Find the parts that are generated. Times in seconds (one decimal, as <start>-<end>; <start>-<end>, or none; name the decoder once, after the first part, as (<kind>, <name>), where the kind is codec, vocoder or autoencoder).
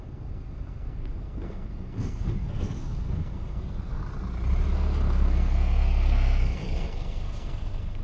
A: 0.0-4.0 (codec, SNAC); 4.7-8.0